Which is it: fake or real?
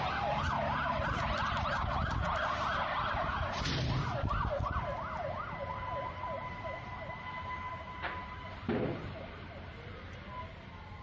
real